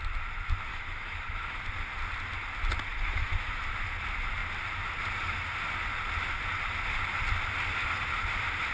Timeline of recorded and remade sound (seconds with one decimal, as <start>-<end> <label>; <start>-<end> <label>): 0.0-0.7 recorded; 0.7-1.6 remade; 1.6-2.9 recorded; 2.9-3.6 remade; 3.6-8.7 recorded